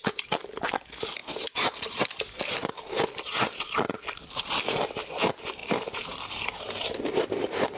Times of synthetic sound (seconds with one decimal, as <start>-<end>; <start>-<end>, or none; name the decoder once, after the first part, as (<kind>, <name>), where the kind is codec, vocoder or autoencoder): none